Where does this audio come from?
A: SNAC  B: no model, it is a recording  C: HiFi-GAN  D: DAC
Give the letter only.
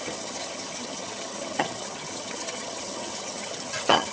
C